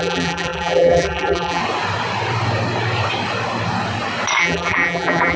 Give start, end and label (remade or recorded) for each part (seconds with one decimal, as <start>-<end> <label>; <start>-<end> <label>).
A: 0.0-1.6 remade; 1.6-4.4 recorded; 4.4-5.4 remade